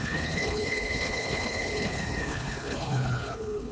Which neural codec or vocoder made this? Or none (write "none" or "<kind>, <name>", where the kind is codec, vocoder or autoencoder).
codec, HILCodec